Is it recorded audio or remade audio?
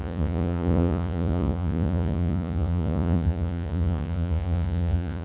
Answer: remade